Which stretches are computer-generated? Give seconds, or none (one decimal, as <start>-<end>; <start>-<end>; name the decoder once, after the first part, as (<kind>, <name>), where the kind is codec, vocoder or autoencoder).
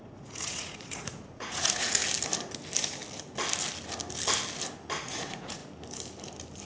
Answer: 0.0-2.0 (vocoder, Vocos); 5.0-5.6